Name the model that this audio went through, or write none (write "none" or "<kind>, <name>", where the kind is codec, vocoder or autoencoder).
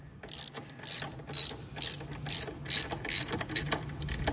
none